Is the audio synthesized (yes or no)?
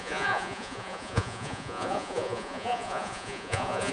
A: yes